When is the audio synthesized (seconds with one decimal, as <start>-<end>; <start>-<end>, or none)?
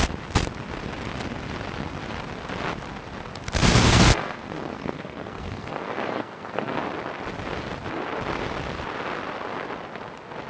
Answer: 3.6-6.8